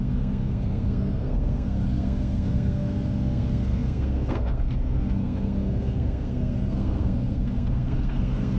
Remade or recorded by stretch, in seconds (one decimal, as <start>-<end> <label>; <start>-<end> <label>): 0.0-8.6 remade